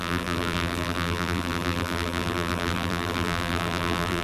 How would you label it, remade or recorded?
remade